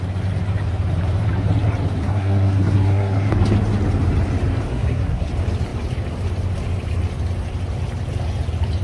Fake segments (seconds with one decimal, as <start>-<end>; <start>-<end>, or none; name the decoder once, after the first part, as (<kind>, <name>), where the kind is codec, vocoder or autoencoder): 2.0-3.3 (codec, SNAC); 4.7-5.3